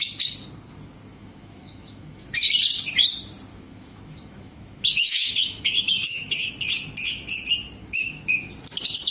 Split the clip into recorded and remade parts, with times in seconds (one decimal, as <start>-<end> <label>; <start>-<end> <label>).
0.0-1.1 recorded; 1.1-2.5 remade; 2.5-3.5 recorded; 3.5-6.5 remade; 6.5-7.8 recorded; 7.8-8.5 remade; 8.5-9.1 recorded